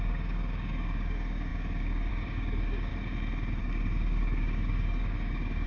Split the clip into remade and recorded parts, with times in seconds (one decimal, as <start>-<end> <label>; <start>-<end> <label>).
0.0-2.9 remade; 2.9-3.6 recorded; 3.6-5.7 remade